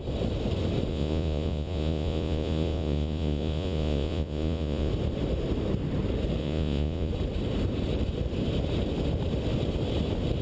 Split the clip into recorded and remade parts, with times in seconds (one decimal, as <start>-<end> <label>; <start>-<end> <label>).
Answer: 0.0-0.9 recorded; 0.9-4.9 remade; 4.9-6.4 recorded; 6.4-7.1 remade; 7.1-10.4 recorded